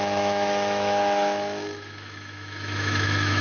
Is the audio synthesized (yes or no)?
yes